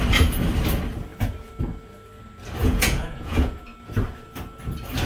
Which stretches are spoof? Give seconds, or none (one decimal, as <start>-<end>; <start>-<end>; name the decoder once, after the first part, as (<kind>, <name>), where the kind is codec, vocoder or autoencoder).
2.6-3.6 (vocoder, Vocos)

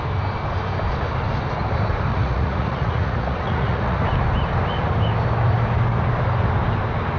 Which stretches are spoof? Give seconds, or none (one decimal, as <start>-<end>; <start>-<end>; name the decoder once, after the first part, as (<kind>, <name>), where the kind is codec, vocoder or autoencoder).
2.1-4.0 (vocoder, Vocos)

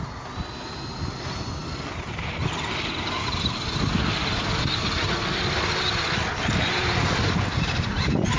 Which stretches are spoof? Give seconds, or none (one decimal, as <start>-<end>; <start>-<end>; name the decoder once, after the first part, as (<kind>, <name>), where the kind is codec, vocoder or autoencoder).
none

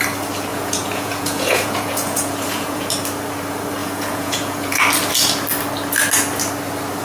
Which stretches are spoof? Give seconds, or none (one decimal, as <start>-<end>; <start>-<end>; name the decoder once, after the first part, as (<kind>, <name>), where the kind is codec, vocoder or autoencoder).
0.5-2.9 (vocoder, Vocos); 3.8-4.8

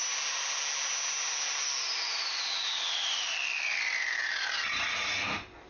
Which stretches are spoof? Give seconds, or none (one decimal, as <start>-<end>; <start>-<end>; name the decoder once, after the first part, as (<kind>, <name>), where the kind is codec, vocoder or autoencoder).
none

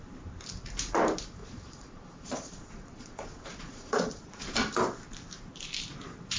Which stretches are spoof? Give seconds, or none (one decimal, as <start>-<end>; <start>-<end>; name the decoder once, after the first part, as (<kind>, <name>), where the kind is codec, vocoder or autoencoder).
1.4-4.4 (vocoder, Vocos)

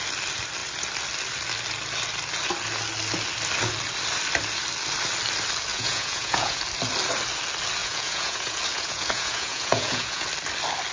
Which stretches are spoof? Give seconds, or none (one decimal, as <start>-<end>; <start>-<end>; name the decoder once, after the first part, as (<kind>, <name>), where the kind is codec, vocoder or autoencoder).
5.7-6.6 (vocoder, Vocos); 7.8-10.3